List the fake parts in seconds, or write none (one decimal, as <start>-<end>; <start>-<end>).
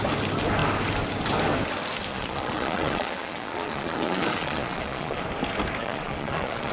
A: 2.1-5.2; 5.8-6.7